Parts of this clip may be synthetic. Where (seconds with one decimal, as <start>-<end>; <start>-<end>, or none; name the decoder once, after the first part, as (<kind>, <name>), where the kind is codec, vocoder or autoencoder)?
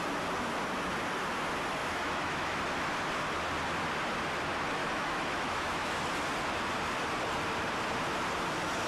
1.8-2.6 (autoencoder, DAC-VAE); 4.8-6.0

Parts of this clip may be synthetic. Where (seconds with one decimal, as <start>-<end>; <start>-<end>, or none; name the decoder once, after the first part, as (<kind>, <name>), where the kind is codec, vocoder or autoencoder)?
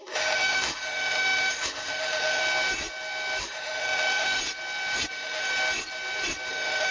0.0-2.4 (autoencoder, DAC-VAE); 3.4-4.4; 5.1-5.5; 6.5-6.9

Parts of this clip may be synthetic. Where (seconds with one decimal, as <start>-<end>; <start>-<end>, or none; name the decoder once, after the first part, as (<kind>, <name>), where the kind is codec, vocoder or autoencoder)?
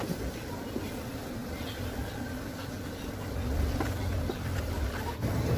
none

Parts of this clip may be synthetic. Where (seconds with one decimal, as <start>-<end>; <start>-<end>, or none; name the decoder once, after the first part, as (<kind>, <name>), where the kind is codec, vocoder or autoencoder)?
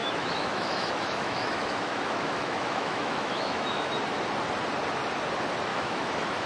0.0-3.9 (autoencoder, DAC-VAE); 5.7-6.5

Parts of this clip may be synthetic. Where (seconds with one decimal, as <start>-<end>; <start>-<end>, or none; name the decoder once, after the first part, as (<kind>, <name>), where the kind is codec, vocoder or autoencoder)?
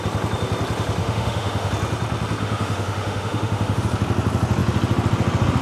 1.0-1.7 (autoencoder, DAC-VAE); 2.4-3.8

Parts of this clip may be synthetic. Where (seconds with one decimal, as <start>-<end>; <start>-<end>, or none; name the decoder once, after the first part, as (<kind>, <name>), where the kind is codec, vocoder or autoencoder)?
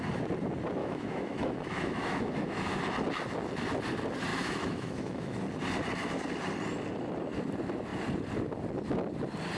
0.8-2.8 (autoencoder, DAC-VAE); 4.3-5.4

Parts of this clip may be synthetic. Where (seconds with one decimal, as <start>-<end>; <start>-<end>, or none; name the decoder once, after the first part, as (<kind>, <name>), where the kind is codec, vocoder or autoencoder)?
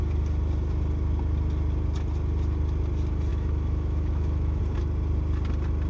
3.3-4.6 (autoencoder, DAC-VAE)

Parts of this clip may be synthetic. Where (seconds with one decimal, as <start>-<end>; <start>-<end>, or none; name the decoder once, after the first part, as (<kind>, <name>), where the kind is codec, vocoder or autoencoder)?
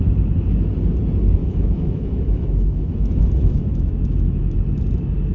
1.4-4.6 (autoencoder, DAC-VAE)